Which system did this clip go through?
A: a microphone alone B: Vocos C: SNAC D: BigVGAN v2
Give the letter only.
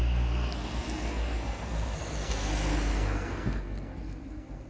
C